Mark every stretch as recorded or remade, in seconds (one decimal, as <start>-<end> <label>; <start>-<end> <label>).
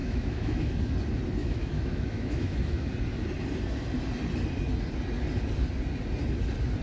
0.0-0.7 remade; 0.7-1.4 recorded; 1.4-2.9 remade; 2.9-6.8 recorded